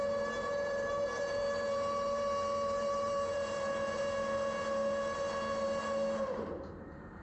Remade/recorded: remade